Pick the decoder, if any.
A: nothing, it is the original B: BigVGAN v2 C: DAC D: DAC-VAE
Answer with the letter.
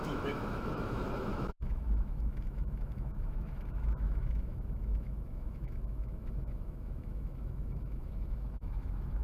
D